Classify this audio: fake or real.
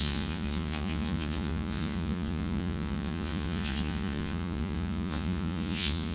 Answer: fake